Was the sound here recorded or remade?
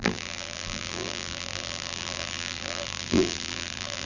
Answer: remade